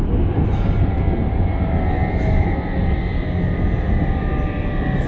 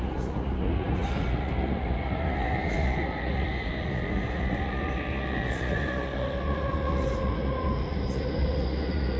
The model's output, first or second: second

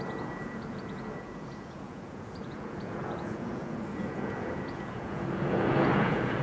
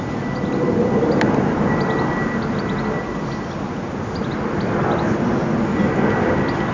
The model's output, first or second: first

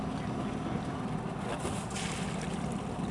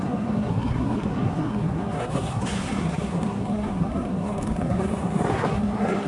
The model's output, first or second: second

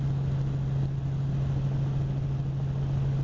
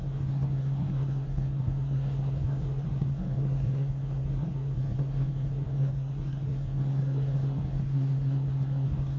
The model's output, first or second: second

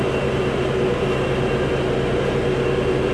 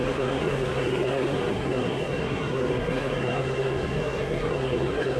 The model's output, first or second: second